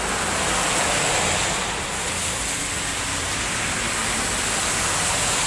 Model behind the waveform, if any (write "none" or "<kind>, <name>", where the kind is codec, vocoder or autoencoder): none